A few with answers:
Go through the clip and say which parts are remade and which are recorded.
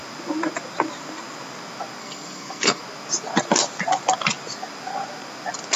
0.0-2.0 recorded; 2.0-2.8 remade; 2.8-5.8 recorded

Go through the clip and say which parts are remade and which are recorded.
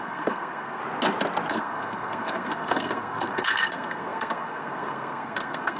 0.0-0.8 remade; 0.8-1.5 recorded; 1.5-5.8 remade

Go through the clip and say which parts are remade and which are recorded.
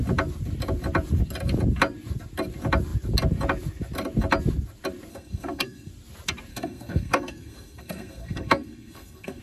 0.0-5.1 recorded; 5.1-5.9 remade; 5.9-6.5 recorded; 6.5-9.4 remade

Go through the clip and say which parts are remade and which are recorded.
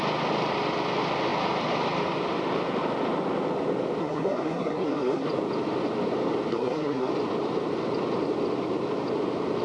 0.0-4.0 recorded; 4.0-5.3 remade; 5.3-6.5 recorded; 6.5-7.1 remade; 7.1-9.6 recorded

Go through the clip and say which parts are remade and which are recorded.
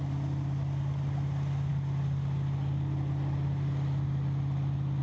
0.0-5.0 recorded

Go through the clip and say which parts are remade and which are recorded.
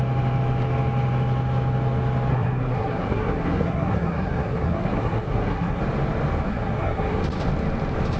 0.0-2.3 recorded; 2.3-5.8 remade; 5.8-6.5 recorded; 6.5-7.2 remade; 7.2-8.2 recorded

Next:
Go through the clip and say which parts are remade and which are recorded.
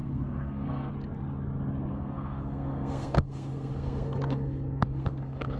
0.0-0.9 remade; 0.9-1.9 recorded; 1.9-5.6 remade